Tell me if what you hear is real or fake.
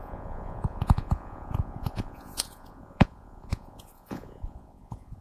fake